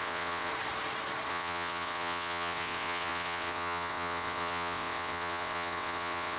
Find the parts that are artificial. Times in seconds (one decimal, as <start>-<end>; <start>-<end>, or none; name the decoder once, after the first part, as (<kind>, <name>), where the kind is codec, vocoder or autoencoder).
0.0-0.5 (vocoder, WaveNeXt); 1.3-6.4